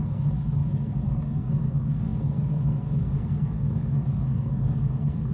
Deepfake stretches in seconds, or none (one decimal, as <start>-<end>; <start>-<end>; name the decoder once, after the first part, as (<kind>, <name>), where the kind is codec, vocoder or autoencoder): 0.0-5.3 (codec, SNAC)